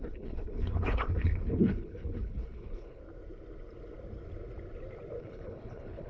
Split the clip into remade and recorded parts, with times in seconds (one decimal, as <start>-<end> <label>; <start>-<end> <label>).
0.0-3.0 remade; 3.0-5.2 recorded; 5.2-6.1 remade